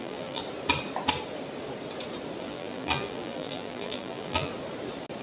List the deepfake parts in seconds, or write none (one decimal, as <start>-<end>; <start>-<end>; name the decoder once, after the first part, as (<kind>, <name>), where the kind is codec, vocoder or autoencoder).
0.0-0.4 (vocoder, BigVGAN v2); 2.4-4.5